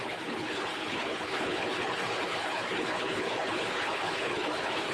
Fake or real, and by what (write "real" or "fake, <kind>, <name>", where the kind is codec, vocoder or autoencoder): fake, codec, HILCodec